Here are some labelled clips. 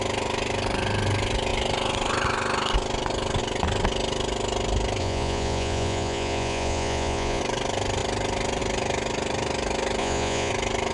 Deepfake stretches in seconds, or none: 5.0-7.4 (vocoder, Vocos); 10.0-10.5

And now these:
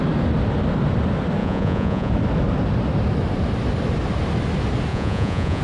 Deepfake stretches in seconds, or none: 1.4-2.1 (vocoder, Vocos); 4.9-5.6